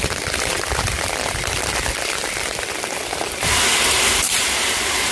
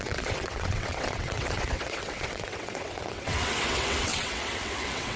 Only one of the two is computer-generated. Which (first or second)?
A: second